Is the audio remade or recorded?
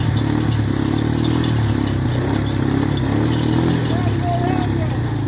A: recorded